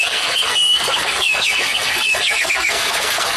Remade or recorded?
remade